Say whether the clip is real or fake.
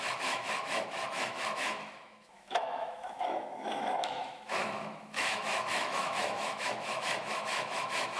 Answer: fake